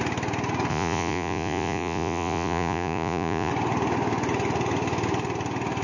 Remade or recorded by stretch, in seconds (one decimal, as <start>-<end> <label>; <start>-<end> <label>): 0.0-0.7 recorded; 0.7-3.5 remade; 3.5-5.8 recorded